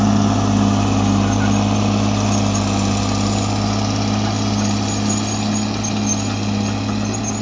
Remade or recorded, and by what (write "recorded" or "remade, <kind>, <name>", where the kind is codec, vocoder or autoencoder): recorded